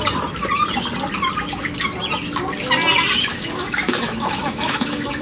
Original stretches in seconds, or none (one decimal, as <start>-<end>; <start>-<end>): 0.0-3.3